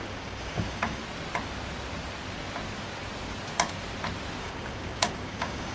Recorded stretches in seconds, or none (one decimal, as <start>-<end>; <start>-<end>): 1.0-4.4